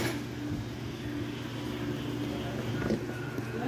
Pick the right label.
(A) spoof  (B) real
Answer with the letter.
B